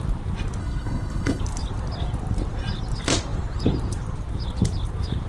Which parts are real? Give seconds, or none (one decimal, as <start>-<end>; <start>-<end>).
0.0-0.6; 1.4-5.3